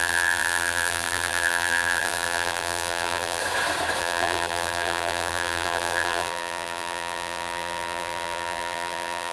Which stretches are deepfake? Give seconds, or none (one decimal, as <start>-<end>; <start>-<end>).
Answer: 0.0-3.4; 4.0-9.3